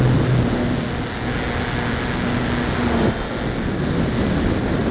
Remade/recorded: recorded